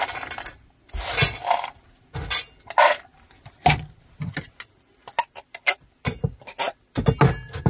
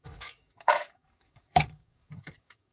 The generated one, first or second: second